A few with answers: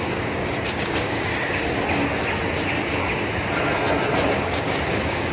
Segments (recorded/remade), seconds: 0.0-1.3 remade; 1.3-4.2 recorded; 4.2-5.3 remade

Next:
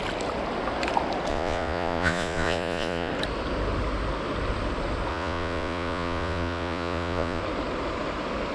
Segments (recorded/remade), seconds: 0.0-1.3 recorded; 1.3-3.1 remade; 3.1-5.1 recorded; 5.1-7.4 remade; 7.4-8.5 recorded

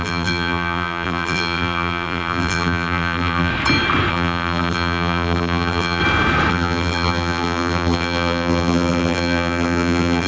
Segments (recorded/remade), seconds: 0.0-3.5 remade; 3.5-4.1 recorded; 4.1-6.0 remade; 6.0-6.5 recorded; 6.5-10.3 remade

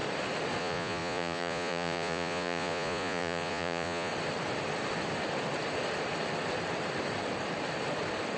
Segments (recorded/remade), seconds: 0.0-0.6 recorded; 0.6-4.1 remade; 4.1-8.4 recorded

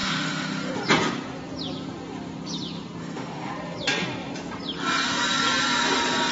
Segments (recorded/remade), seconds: 0.0-0.7 remade; 0.7-3.0 recorded; 3.0-3.5 remade; 3.5-6.3 recorded